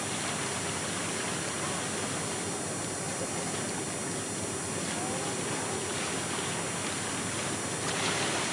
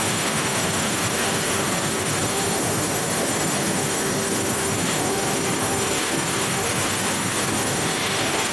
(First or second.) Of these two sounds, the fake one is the second